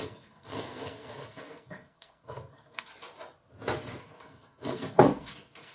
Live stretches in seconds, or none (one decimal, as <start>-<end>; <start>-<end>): 2.9-4.0